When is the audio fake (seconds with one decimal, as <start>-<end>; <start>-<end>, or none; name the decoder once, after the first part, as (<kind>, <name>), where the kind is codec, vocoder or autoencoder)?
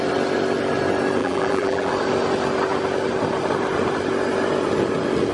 1.2-1.9 (vocoder, BigVGAN v2)